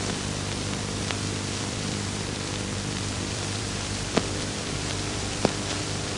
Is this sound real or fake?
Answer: fake